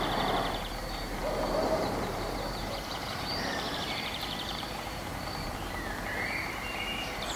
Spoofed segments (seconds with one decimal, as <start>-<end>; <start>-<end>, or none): 1.2-5.6

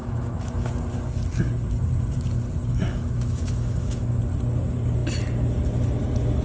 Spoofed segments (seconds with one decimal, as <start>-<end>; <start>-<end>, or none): 0.0-0.7; 2.7-4.2

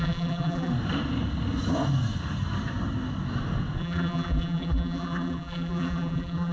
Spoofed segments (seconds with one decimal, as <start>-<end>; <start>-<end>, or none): 0.0-0.7; 3.8-6.5

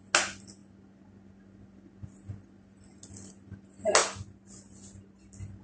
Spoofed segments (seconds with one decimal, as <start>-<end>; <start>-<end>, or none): none

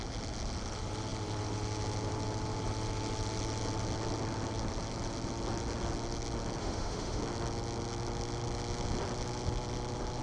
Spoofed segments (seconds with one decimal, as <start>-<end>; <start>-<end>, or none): 6.6-7.2

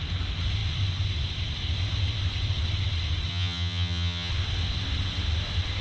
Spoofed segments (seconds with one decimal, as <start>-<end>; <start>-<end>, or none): 3.3-4.3

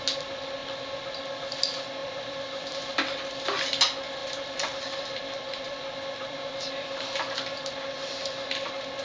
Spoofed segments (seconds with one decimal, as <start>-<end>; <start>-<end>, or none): 2.0-2.9; 4.2-6.5

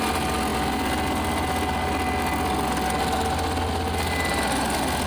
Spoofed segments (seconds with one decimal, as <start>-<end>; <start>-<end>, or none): none